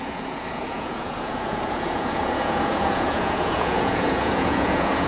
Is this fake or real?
fake